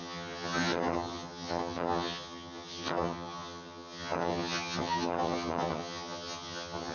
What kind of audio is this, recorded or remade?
remade